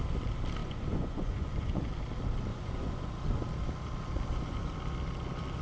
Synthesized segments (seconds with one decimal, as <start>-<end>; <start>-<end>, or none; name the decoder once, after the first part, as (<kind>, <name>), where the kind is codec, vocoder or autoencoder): 0.6-1.8 (vocoder, Vocos); 2.5-3.1